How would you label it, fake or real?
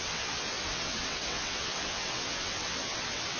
fake